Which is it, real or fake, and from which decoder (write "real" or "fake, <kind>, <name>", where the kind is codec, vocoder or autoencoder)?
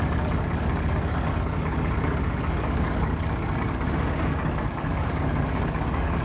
fake, codec, DAC